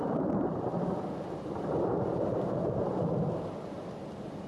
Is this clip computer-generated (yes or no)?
no